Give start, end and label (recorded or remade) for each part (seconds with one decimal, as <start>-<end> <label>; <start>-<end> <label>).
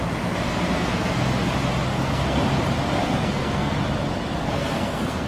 0.0-0.5 recorded; 0.5-1.1 remade; 1.1-1.9 recorded; 1.9-2.4 remade; 2.4-3.0 recorded; 3.0-3.7 remade; 3.7-4.4 recorded; 4.4-5.3 remade